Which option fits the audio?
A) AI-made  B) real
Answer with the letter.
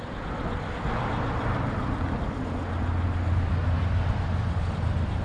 B